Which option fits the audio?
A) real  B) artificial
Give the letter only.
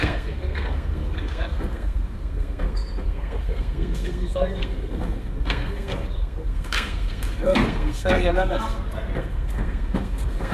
B